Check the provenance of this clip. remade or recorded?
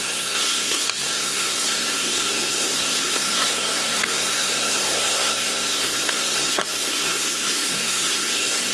remade